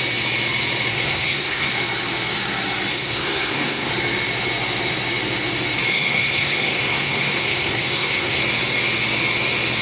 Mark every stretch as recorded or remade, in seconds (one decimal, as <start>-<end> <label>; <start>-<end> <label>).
0.0-0.9 recorded; 0.9-1.7 remade; 1.7-2.9 recorded; 2.9-3.9 remade; 3.9-5.9 recorded; 5.9-8.4 remade; 8.4-9.8 recorded